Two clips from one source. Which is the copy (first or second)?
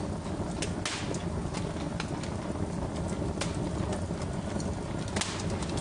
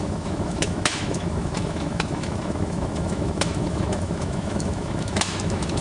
second